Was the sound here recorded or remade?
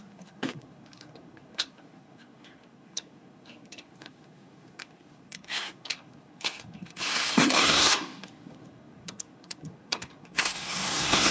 remade